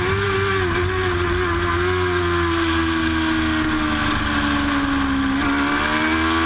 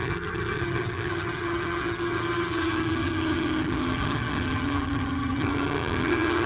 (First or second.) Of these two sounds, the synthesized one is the second